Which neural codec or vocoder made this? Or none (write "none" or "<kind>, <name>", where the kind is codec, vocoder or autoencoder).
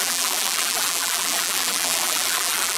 vocoder, BigVGAN v2